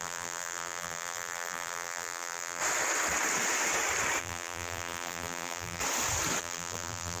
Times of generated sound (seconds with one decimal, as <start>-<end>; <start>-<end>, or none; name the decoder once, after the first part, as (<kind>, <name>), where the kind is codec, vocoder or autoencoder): 0.0-2.6 (vocoder, BigVGAN v2); 4.2-5.8; 6.4-7.2